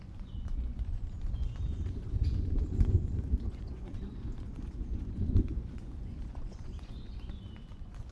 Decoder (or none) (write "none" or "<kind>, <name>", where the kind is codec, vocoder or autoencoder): vocoder, Vocos